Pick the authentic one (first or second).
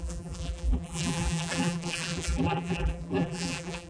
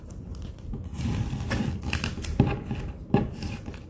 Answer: second